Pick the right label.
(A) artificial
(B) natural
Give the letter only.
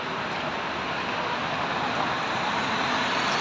B